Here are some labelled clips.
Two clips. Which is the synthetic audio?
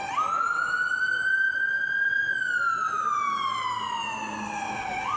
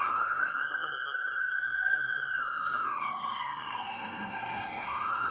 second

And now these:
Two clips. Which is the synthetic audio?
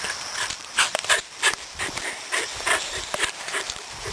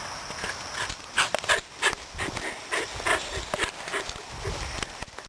first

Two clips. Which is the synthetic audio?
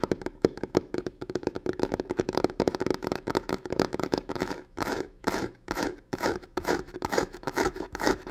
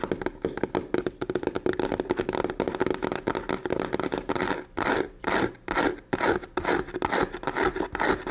first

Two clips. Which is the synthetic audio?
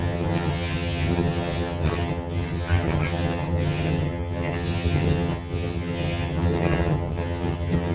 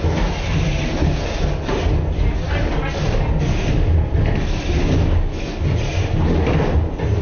first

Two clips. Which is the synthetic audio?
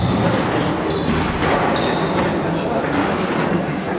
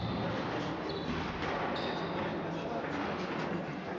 first